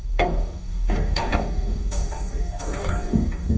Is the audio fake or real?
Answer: fake